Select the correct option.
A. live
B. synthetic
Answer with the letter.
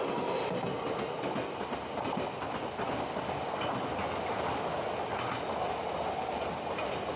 A